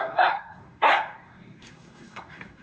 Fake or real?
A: fake